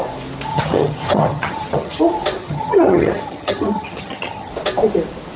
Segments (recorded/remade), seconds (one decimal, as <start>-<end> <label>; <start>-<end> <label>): 0.0-0.5 recorded; 0.5-2.0 remade; 2.0-2.4 recorded; 2.4-4.5 remade; 4.5-5.4 recorded